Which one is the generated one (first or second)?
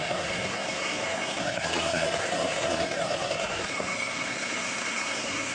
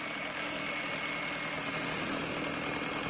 first